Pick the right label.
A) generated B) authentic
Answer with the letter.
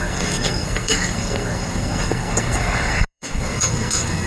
A